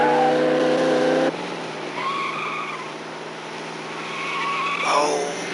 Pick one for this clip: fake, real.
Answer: real